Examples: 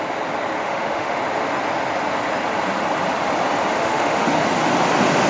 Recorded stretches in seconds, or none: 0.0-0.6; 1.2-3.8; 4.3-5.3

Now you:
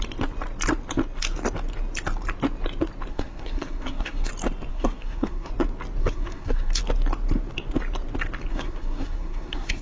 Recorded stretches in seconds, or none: 0.0-3.1; 4.3-4.7; 5.5-6.0; 6.8-8.5

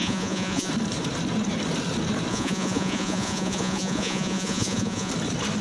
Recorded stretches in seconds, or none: 0.7-2.3; 5.1-5.6